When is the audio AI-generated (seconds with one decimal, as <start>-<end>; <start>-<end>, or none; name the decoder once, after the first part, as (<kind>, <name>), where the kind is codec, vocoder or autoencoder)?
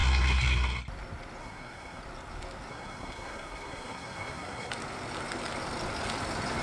0.0-0.8 (codec, SNAC); 1.4-2.0; 2.7-4.7